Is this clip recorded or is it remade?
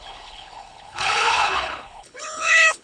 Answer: remade